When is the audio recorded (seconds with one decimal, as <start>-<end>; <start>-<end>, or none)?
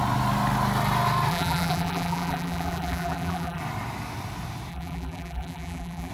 0.0-1.3; 3.6-4.7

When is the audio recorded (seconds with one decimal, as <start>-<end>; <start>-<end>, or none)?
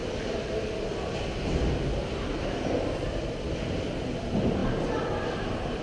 3.4-5.8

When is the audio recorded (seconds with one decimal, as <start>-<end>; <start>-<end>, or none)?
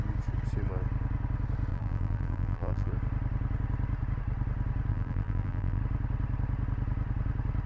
0.0-1.7; 2.9-4.9; 5.8-7.7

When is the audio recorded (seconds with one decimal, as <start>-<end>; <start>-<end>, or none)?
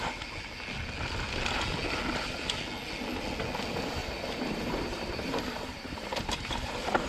0.0-4.0